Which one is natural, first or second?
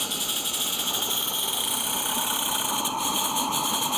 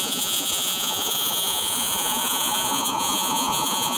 first